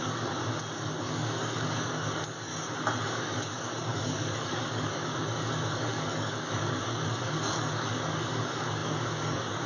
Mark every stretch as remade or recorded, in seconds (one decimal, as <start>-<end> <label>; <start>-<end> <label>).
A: 0.0-0.4 remade; 0.4-1.0 recorded; 1.0-2.5 remade; 2.5-3.0 recorded; 3.0-9.7 remade